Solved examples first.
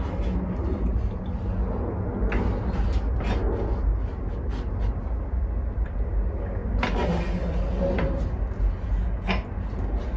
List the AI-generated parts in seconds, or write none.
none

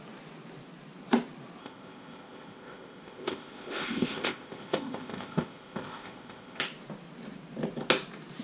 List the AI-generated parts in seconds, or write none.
1.6-6.6

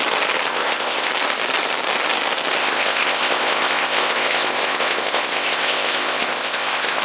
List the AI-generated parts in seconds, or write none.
0.5-1.1; 2.6-7.0